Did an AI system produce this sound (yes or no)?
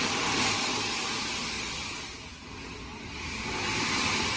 no